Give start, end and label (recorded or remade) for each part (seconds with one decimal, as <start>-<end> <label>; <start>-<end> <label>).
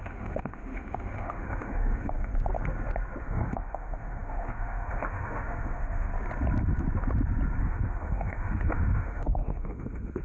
0.0-2.3 remade; 2.3-3.2 recorded; 3.2-6.1 remade; 6.1-7.6 recorded; 7.6-10.2 remade